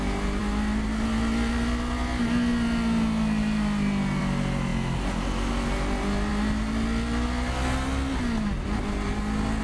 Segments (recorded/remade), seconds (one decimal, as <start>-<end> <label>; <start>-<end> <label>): 0.0-9.6 recorded